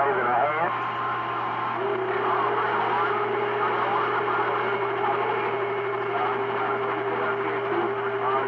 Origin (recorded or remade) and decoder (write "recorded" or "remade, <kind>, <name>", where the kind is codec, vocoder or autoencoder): recorded